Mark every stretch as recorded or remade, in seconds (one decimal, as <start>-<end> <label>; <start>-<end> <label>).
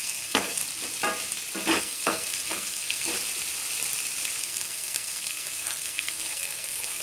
0.0-0.6 remade; 0.6-1.8 recorded; 1.8-3.1 remade; 3.1-4.4 recorded; 4.4-7.0 remade